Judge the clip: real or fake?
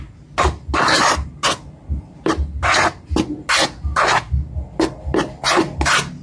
real